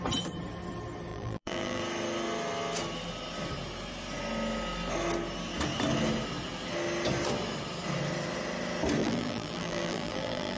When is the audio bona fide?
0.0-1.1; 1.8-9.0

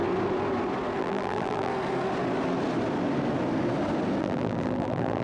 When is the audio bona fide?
0.0-1.0; 1.7-4.2

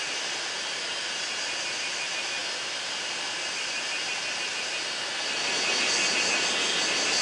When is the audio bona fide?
0.0-7.2